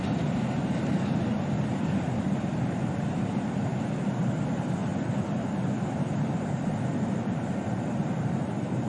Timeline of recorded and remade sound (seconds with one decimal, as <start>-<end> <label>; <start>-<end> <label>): 0.0-0.9 remade; 0.9-1.5 recorded; 1.5-3.6 remade; 3.6-4.3 recorded; 4.3-8.9 remade